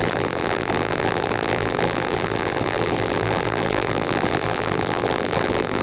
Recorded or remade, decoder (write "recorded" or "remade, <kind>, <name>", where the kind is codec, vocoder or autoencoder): remade, vocoder, BigVGAN v2